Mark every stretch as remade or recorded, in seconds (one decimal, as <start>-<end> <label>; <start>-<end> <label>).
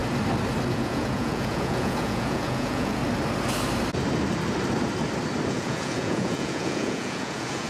0.0-0.7 recorded; 0.7-3.0 remade; 3.0-5.5 recorded; 5.5-7.7 remade